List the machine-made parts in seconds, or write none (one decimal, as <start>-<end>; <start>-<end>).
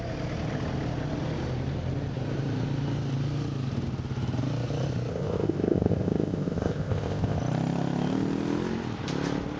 5.1-7.4